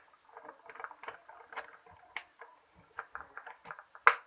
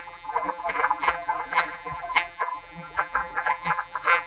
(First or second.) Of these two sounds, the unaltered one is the first